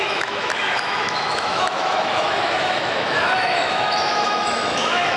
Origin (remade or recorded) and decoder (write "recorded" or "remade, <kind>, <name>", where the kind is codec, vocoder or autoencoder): remade, autoencoder, DAC-VAE